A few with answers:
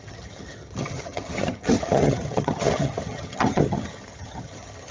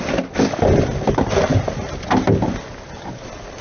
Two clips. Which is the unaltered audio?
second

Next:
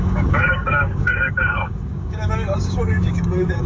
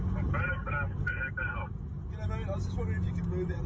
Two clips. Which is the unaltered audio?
second